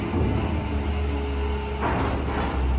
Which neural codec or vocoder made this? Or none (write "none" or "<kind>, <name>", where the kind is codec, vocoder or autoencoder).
none